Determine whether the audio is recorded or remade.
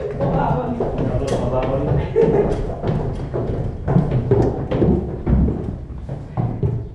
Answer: recorded